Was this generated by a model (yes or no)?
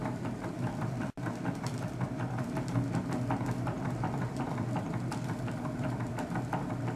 yes